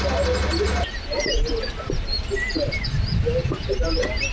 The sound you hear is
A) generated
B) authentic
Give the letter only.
B